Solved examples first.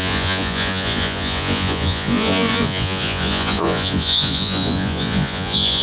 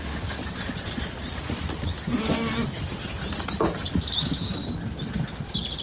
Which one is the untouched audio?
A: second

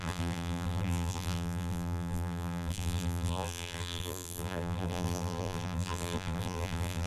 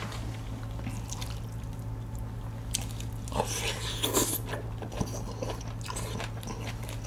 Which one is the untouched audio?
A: second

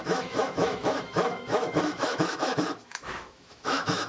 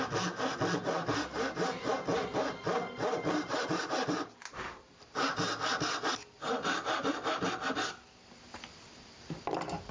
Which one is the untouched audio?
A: second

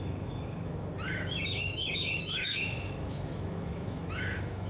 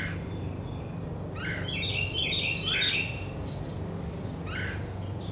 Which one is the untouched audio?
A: second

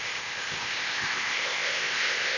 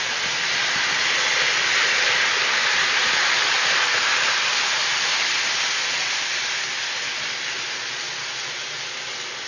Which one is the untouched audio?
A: second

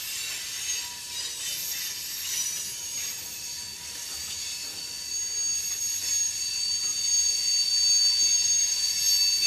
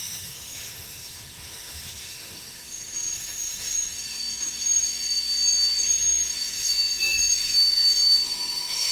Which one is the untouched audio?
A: first